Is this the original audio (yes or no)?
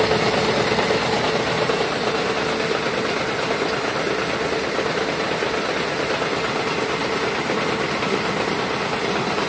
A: yes